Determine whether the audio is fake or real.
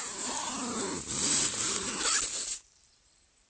fake